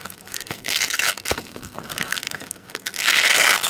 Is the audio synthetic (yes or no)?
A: yes